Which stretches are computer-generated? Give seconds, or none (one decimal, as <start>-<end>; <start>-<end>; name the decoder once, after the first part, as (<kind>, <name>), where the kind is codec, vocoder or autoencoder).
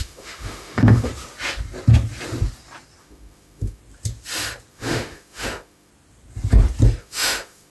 0.0-1.1 (autoencoder, DAC-VAE); 3.0-3.8; 4.7-5.9; 7.0-7.7